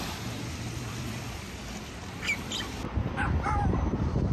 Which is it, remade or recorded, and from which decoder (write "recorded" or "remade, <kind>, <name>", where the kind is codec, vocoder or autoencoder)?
recorded